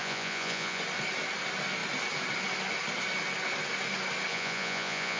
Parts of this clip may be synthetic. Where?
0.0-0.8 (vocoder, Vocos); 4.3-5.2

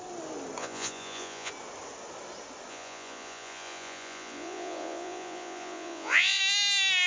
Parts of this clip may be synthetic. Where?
0.6-1.5 (vocoder, Vocos); 2.7-6.4

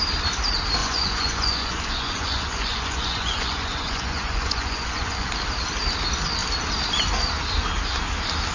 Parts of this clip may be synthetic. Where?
0.8-5.3 (vocoder, Vocos)